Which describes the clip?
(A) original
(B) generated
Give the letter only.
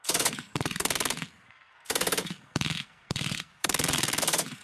B